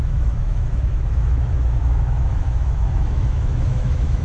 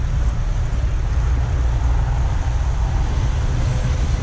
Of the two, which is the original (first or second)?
second